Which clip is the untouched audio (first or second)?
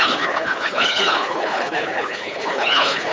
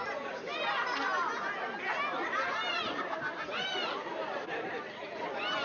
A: second